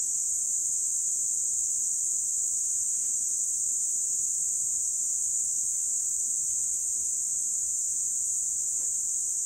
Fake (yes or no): no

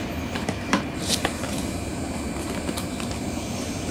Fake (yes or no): yes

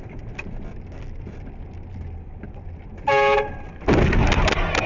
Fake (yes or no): no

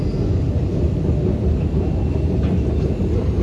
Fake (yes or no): no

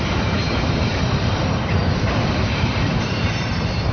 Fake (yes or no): yes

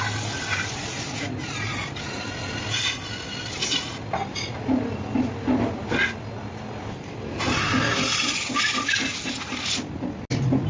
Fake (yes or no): no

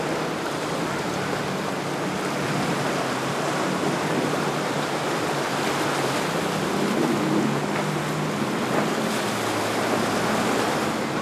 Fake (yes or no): no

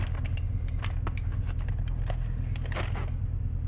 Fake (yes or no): no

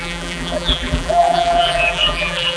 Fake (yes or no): yes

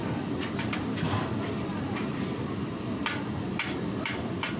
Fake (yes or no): yes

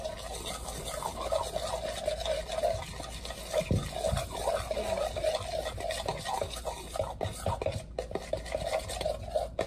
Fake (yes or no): no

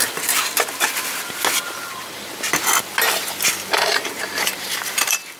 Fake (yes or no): no